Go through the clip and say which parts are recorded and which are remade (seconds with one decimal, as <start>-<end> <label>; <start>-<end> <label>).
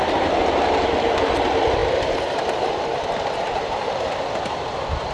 0.0-5.1 recorded